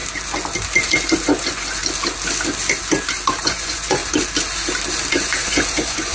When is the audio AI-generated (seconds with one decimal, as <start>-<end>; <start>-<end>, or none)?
1.2-1.8; 3.4-4.0; 5.1-6.1